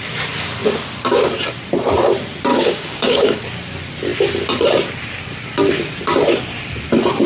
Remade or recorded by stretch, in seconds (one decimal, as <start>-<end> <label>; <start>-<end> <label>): 0.0-2.5 recorded; 2.5-3.4 remade; 3.4-7.3 recorded